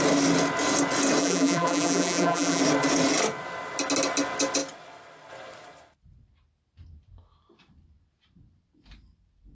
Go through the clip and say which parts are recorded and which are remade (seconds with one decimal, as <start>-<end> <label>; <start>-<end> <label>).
0.0-1.2 recorded; 1.2-2.6 remade; 2.6-9.5 recorded